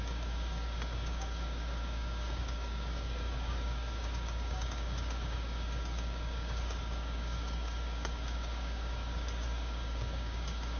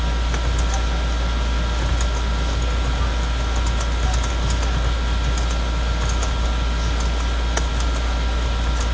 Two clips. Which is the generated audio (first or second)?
first